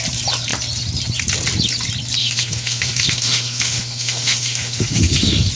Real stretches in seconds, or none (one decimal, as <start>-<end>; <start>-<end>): 0.0-2.2